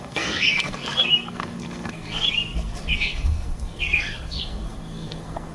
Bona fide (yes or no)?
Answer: no